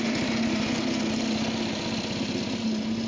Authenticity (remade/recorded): recorded